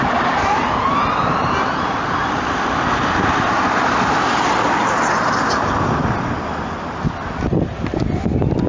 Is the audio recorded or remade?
recorded